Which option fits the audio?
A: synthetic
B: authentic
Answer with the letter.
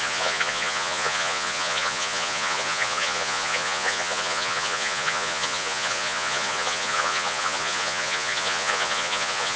A